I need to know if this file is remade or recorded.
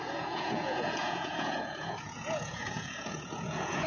remade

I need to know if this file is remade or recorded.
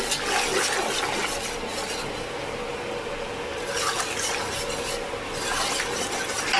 recorded